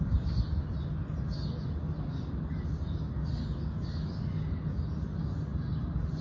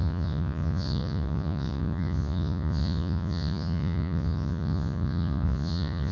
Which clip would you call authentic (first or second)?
first